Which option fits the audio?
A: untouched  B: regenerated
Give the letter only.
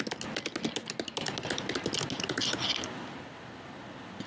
A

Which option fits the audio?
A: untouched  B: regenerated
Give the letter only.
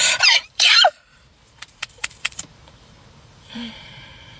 B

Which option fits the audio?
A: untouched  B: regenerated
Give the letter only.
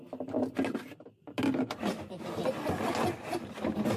A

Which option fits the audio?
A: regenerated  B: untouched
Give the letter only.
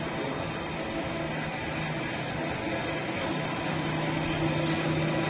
B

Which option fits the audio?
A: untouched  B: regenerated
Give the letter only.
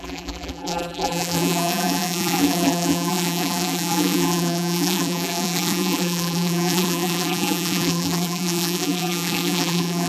B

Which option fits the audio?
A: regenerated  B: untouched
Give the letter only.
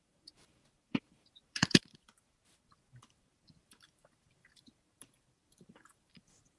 A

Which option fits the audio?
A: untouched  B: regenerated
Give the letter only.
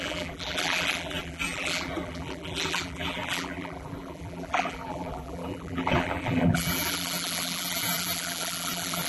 B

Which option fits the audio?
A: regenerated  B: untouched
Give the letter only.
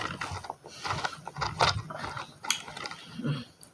B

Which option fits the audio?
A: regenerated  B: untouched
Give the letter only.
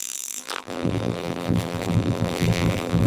A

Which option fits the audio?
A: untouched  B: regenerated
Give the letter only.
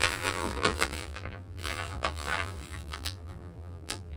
B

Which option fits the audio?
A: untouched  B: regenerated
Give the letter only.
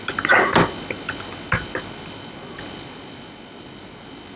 A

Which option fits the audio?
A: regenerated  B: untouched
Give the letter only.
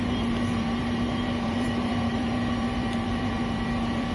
A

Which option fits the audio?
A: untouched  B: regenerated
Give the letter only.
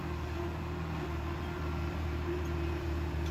B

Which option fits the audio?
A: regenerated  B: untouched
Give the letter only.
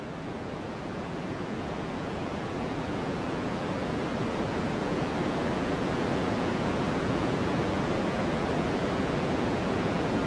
A